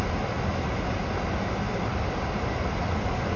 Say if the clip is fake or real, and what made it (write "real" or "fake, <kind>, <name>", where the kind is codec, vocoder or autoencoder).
real